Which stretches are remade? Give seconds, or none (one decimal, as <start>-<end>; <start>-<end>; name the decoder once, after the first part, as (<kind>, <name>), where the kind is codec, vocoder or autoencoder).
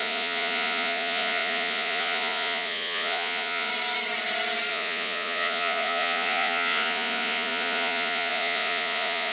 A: 0.0-3.7 (vocoder, Vocos); 4.7-9.3